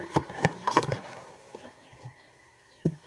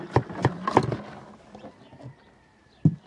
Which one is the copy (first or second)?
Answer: first